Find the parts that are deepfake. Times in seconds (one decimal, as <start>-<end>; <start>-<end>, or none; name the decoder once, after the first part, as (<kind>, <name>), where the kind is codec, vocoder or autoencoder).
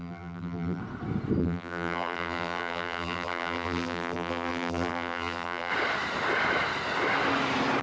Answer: 0.0-0.8 (vocoder, BigVGAN v2); 1.4-5.7